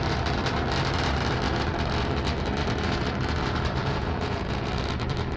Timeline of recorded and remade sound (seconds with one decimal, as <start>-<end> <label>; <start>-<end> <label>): 0.0-3.8 recorded; 3.8-4.7 remade; 4.7-5.4 recorded